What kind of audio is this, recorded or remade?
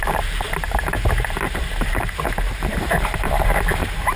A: remade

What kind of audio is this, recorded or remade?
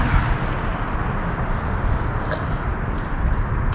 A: recorded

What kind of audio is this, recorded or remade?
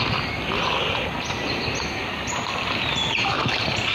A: recorded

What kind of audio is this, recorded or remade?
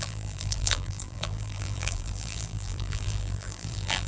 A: remade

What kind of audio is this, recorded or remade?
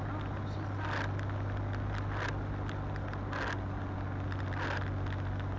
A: recorded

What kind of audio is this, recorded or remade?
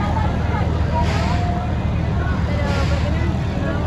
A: recorded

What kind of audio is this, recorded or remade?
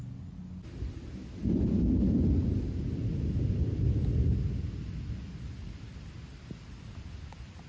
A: recorded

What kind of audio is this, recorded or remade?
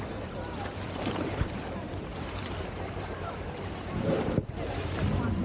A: remade